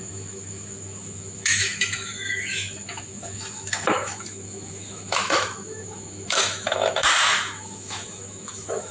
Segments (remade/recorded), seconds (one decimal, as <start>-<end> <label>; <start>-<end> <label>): 0.0-8.9 remade

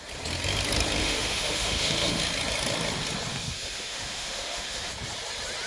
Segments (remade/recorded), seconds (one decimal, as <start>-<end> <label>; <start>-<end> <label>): 0.0-1.0 recorded; 1.0-2.2 remade; 2.2-3.3 recorded; 3.3-4.9 remade; 4.9-5.7 recorded

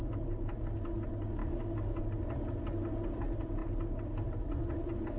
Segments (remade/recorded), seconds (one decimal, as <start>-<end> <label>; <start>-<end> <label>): 0.0-1.4 recorded; 1.4-2.0 remade; 2.0-5.2 recorded